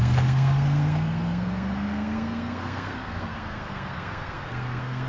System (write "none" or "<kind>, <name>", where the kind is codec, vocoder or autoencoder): codec, SNAC